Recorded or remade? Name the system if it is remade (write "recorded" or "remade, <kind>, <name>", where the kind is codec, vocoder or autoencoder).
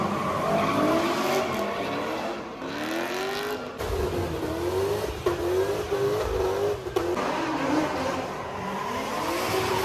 recorded